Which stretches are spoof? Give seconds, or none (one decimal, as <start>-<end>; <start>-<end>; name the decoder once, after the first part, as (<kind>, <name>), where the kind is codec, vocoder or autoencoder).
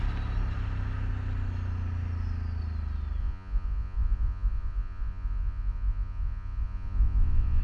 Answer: 3.2-7.6 (vocoder, Vocos)